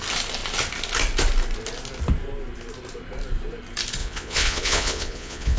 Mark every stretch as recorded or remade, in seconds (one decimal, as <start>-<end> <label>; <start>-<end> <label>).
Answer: 0.0-4.0 recorded; 4.0-5.6 remade